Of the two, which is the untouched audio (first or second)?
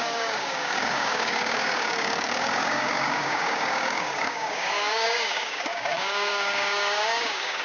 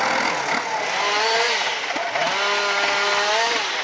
second